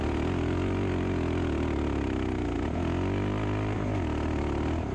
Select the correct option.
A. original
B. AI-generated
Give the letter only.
A